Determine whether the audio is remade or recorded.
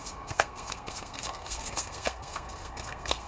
remade